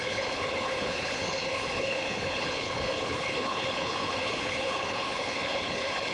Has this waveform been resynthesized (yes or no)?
yes